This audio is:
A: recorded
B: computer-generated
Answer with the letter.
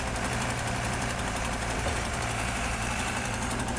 B